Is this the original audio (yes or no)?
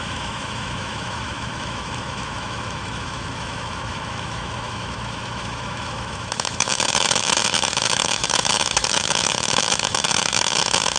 no